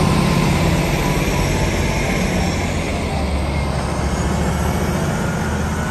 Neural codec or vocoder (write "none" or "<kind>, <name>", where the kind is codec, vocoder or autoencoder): none